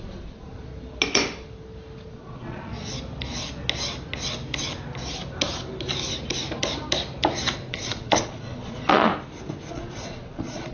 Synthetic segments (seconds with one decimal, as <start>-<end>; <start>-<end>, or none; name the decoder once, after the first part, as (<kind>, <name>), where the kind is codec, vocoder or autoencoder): 0.0-0.7 (vocoder, Vocos); 2.1-2.7; 7.7-9.1; 9.7-10.7